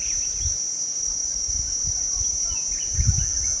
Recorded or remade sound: recorded